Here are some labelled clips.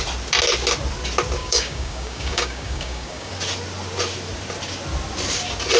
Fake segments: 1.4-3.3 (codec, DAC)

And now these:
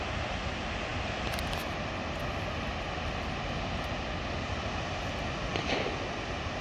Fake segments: none